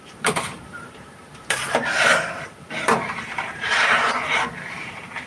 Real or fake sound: fake